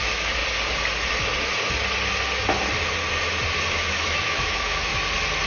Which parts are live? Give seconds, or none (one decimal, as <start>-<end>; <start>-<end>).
0.4-3.7; 4.9-5.5